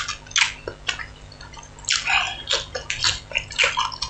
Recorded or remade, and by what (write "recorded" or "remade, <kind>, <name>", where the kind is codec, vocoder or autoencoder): recorded